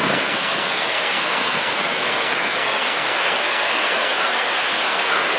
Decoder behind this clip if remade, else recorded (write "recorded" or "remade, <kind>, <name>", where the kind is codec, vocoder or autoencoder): remade, codec, SNAC